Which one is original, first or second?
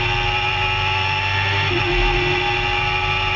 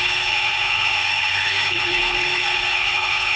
first